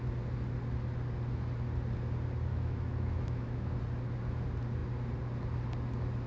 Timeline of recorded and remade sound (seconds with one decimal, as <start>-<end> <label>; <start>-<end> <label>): 0.0-2.5 recorded; 2.5-3.8 remade; 3.8-6.3 recorded